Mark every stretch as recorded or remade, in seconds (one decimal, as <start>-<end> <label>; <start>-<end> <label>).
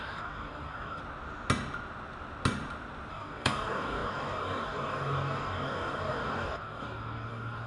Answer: 0.0-1.0 remade; 1.0-3.1 recorded; 3.1-7.7 remade